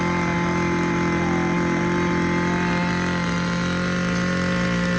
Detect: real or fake real